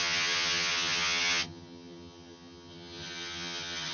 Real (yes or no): no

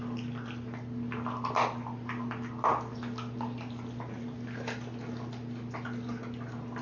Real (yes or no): yes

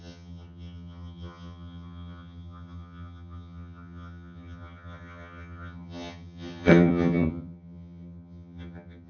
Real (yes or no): no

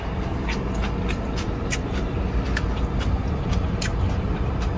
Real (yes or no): yes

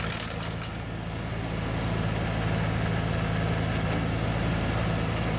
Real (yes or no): yes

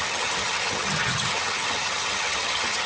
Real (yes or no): no